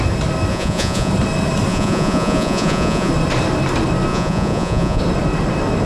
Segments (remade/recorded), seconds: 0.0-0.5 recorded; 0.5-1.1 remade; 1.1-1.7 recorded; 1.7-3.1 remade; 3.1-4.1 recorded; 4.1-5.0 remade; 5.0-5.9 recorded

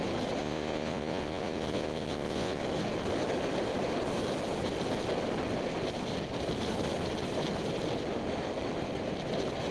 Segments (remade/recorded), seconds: 0.0-0.4 recorded; 0.4-2.6 remade; 2.6-9.7 recorded

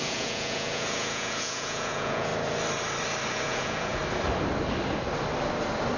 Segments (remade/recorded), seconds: 0.0-2.3 remade; 2.3-3.3 recorded; 3.3-4.0 remade; 4.0-6.0 recorded

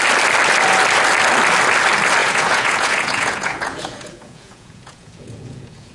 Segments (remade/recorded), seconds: 0.0-2.2 recorded; 2.2-5.9 remade

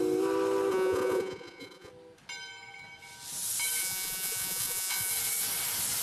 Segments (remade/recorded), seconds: 0.0-0.7 recorded; 0.7-1.9 remade; 1.9-3.8 recorded; 3.8-5.1 remade; 5.1-6.0 recorded

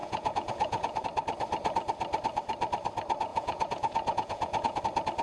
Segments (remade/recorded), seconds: 0.0-1.0 remade; 1.0-3.3 recorded; 3.3-4.8 remade; 4.8-5.2 recorded